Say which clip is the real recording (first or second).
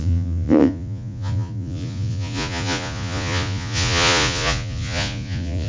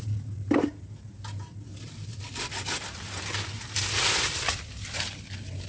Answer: second